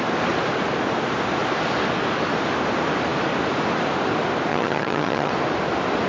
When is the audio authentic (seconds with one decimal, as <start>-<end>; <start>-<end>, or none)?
0.0-4.5; 5.3-6.1